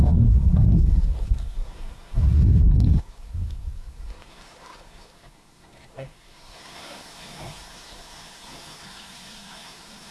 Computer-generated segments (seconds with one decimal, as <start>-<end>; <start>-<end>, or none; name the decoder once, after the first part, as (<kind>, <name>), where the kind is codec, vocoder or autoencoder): 0.0-10.1 (codec, SNAC)